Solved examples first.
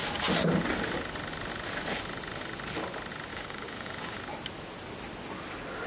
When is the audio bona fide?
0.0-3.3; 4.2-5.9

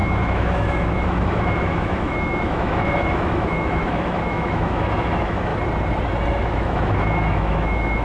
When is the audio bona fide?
5.5-6.3

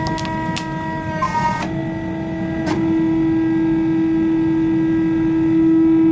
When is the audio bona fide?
0.0-6.1

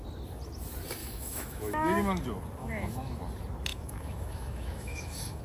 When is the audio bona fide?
0.0-1.0; 2.2-2.6; 3.2-3.7

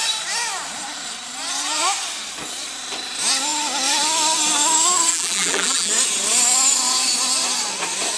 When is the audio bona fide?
0.0-5.1; 5.9-8.2

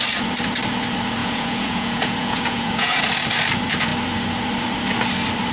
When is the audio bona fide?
0.0-1.2; 3.0-5.5

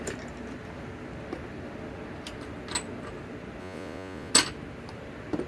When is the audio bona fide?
0.0-3.6; 4.3-5.5